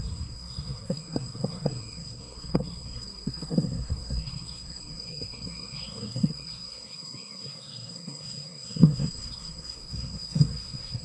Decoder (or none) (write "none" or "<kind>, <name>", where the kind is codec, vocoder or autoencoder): codec, SNAC